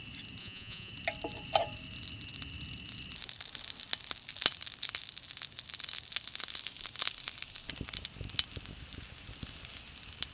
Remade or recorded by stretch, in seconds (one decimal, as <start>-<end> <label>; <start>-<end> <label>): 0.0-0.4 recorded; 0.4-0.9 remade; 0.9-10.3 recorded

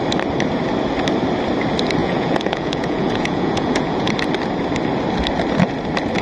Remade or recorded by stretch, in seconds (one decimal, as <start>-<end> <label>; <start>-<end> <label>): 0.0-2.0 recorded; 2.0-4.1 remade; 4.1-6.2 recorded

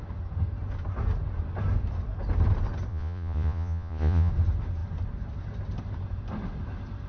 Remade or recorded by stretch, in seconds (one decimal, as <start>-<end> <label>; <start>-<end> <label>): 0.0-2.9 recorded; 2.9-4.3 remade; 4.3-7.1 recorded

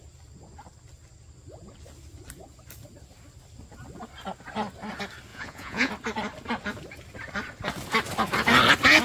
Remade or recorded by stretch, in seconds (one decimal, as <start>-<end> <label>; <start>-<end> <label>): 0.0-5.3 recorded; 5.3-5.9 remade; 5.9-9.0 recorded

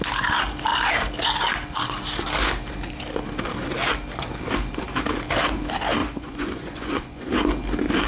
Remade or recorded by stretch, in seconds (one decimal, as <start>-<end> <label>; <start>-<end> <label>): 0.0-6.0 recorded; 6.0-7.3 remade; 7.3-8.1 recorded

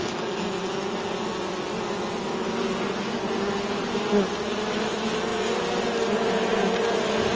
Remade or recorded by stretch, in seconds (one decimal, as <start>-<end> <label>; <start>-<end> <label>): 0.0-7.4 recorded